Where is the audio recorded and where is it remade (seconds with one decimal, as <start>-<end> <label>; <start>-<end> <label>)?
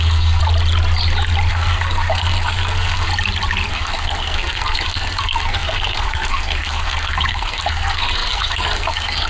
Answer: 0.0-0.4 remade; 0.4-1.5 recorded; 1.5-3.1 remade; 3.1-3.7 recorded; 3.7-9.3 remade